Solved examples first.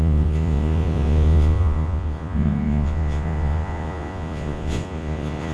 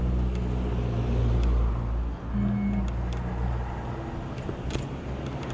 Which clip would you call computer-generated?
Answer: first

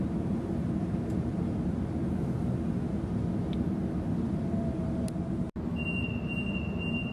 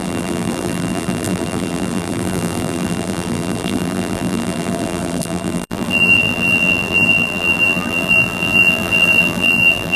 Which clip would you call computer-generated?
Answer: second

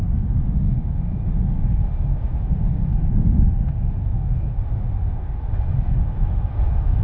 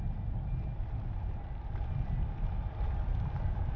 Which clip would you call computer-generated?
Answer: first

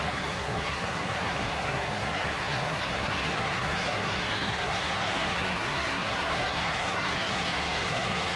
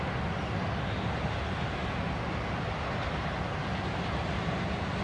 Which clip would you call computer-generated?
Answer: first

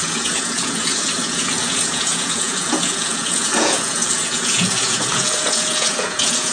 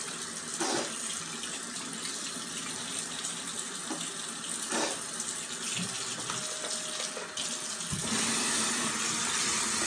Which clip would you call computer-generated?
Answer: first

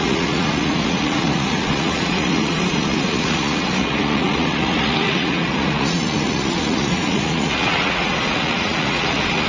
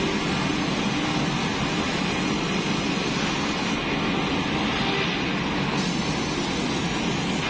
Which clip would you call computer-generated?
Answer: first